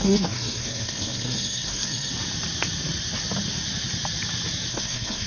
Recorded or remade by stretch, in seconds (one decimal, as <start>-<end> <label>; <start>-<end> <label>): 0.0-2.1 remade; 2.1-4.7 recorded; 4.7-5.3 remade